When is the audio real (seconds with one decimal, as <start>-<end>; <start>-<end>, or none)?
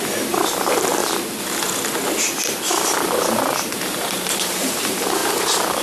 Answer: 1.0-3.7; 5.2-5.8